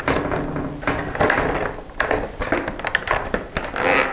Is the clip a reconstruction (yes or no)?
no